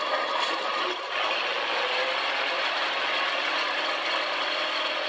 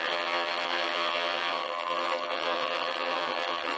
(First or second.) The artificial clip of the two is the second